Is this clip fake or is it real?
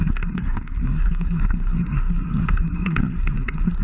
fake